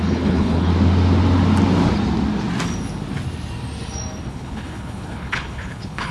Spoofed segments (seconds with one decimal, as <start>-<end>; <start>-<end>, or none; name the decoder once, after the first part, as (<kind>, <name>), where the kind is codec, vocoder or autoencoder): 0.0-0.7 (codec, HILCodec); 4.3-6.1